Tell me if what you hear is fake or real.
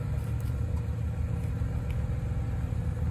real